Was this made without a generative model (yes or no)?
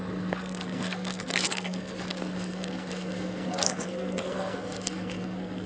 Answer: no